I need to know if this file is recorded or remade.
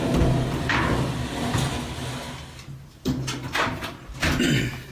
recorded